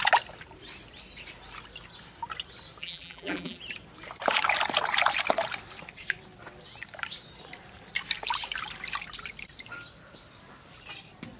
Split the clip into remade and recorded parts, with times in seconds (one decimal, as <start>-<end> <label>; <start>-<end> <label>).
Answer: 0.0-2.8 recorded; 2.8-3.6 remade; 3.6-11.4 recorded